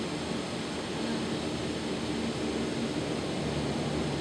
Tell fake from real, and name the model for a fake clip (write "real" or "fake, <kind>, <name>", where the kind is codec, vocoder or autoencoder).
real